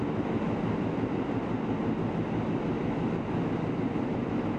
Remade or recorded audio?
recorded